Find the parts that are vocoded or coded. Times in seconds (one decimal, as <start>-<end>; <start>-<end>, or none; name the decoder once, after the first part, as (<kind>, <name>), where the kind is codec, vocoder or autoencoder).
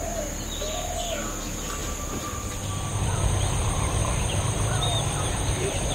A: 1.8-2.5 (vocoder, BigVGAN v2); 4.0-5.0